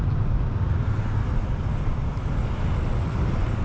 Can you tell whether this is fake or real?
real